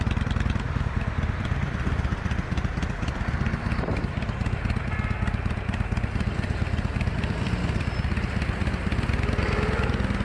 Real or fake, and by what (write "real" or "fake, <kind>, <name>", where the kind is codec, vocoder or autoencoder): fake, vocoder, BigVGAN v2